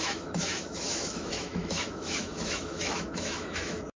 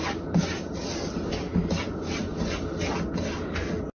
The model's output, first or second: first